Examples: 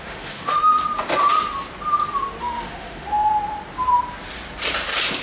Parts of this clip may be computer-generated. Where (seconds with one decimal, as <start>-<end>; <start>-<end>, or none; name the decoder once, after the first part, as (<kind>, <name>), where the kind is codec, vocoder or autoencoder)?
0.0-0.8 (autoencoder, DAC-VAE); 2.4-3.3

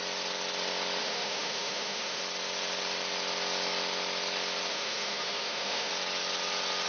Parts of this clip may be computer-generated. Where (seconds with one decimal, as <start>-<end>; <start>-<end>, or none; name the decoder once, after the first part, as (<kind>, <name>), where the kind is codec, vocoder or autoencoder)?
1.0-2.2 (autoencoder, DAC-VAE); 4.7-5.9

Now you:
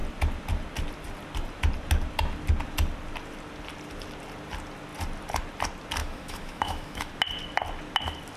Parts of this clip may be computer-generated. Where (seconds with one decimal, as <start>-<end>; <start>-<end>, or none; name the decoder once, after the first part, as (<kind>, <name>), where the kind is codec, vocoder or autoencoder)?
6.0-7.1 (autoencoder, DAC-VAE)

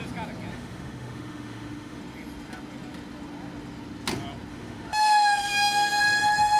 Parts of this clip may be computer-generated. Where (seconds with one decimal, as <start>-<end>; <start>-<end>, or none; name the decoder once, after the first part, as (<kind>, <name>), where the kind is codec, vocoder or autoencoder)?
0.5-2.0 (autoencoder, DAC-VAE); 4.5-6.0

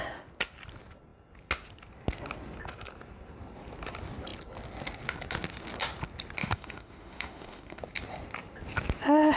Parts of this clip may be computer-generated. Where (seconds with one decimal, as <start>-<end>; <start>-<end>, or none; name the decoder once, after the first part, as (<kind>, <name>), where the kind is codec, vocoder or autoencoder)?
6.4-7.8 (autoencoder, DAC-VAE)